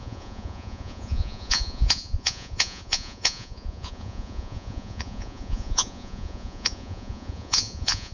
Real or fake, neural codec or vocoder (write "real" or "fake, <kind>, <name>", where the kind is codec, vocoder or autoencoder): fake, vocoder, Vocos